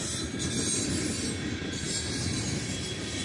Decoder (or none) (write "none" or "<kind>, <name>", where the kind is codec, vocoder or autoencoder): none